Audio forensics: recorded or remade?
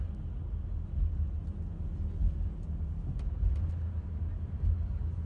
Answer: recorded